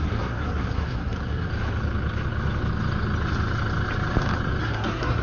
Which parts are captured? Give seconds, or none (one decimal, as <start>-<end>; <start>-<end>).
1.5-4.6